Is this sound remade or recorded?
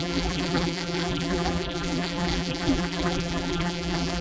remade